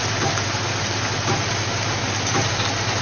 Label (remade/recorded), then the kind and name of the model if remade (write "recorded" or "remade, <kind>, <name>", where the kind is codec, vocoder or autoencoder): recorded